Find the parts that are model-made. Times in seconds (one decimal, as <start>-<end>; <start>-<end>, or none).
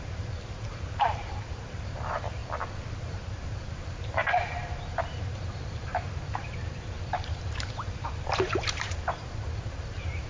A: 0.0-2.4; 2.9-10.3